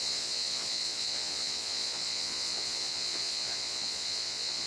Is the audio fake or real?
fake